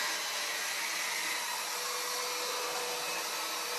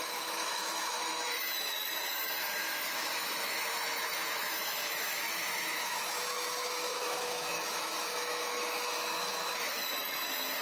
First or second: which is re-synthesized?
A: second